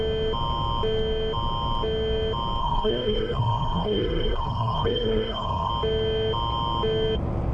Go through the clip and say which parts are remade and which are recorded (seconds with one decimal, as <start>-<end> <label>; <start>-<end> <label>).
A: 0.0-2.6 recorded; 2.6-5.7 remade; 5.7-7.5 recorded